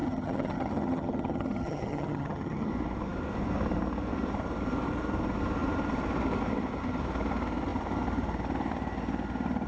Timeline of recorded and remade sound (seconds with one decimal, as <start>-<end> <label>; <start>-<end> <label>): 0.0-2.7 remade; 2.7-9.7 recorded